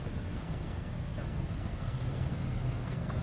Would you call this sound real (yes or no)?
no